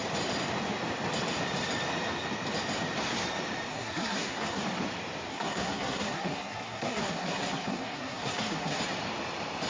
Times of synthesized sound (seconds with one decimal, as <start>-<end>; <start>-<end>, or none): 3.7-4.6; 5.3-8.8